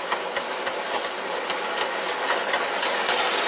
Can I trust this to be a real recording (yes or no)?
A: yes